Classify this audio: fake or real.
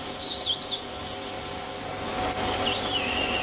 real